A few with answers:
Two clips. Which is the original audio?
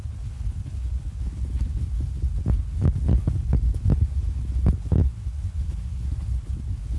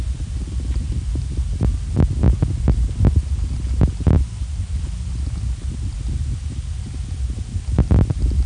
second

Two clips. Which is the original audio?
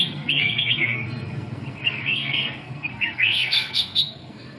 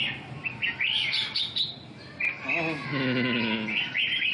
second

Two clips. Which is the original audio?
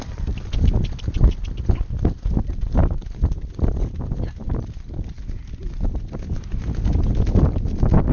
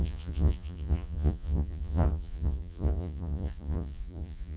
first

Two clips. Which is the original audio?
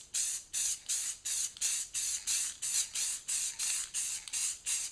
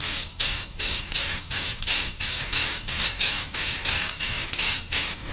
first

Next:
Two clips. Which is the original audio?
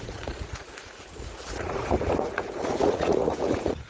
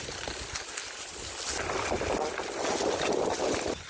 second